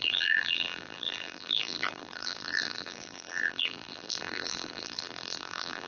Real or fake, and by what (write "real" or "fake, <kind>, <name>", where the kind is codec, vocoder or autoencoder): fake, vocoder, BigVGAN v2